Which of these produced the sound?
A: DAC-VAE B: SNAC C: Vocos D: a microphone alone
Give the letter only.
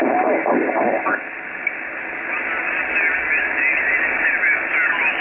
D